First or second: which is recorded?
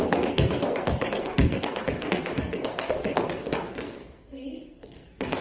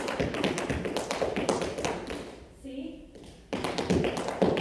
second